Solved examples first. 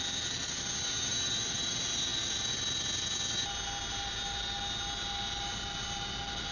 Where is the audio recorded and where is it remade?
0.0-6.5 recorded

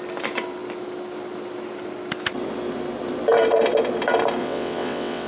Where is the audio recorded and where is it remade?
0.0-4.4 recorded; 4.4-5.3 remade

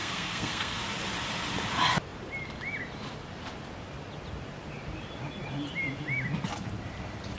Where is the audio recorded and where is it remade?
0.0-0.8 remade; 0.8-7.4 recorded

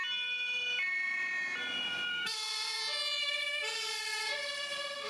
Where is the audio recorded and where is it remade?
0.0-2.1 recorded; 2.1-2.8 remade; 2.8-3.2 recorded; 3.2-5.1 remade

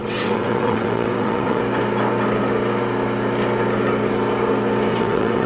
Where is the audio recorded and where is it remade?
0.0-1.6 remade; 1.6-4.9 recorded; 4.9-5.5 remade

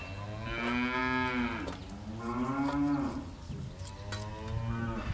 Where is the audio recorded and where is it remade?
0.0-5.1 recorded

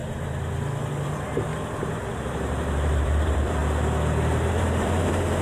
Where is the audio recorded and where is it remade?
0.0-1.0 recorded; 1.0-1.5 remade; 1.5-2.1 recorded; 2.1-3.6 remade; 3.6-4.5 recorded; 4.5-5.4 remade